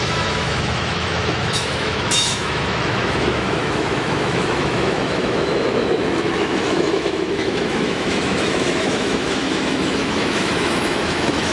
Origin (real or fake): fake